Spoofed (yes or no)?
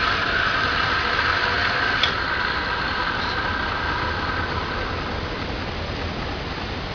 no